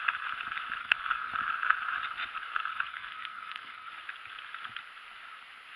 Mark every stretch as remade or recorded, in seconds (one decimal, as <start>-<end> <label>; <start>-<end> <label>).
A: 0.0-0.8 recorded; 0.8-1.3 remade; 1.3-2.7 recorded; 2.7-3.9 remade; 3.9-5.8 recorded